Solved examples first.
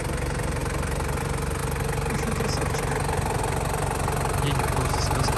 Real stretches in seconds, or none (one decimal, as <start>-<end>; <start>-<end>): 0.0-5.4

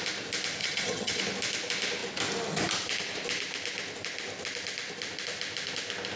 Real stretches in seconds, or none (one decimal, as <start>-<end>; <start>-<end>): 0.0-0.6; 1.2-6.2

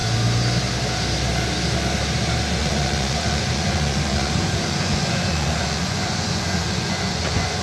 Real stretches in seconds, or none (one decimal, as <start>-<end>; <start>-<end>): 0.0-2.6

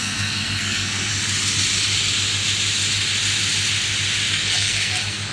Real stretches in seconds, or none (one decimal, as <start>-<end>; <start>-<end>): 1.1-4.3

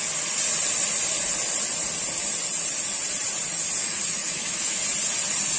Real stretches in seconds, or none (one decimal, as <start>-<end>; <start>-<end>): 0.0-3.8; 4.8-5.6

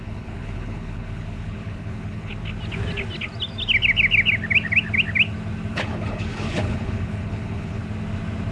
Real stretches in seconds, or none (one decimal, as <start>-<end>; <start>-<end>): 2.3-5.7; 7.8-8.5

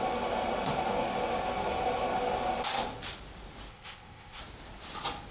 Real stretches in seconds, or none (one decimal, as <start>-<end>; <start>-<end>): 0.0-3.7; 4.4-5.3

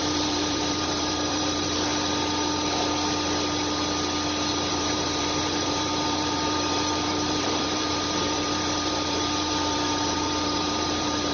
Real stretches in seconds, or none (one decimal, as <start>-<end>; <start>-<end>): 1.9-4.7